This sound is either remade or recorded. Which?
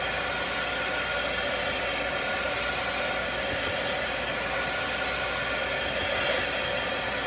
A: recorded